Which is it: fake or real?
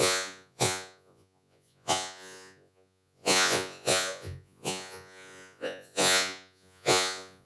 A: fake